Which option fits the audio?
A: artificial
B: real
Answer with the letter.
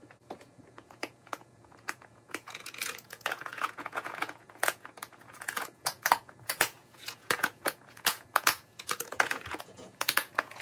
A